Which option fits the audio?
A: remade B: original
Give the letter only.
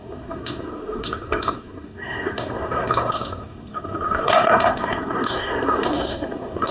A